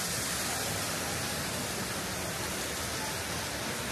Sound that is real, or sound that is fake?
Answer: real